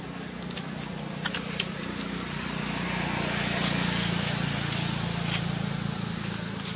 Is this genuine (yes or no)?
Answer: yes